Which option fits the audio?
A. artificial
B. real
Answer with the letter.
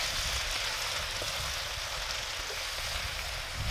B